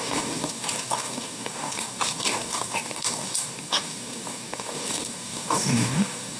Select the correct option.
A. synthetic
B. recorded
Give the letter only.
A